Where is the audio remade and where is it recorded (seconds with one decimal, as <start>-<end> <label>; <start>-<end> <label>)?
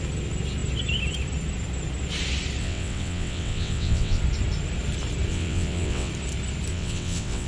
0.0-2.6 recorded; 2.6-4.2 remade; 4.2-5.3 recorded; 5.3-6.1 remade; 6.1-6.7 recorded; 6.7-7.5 remade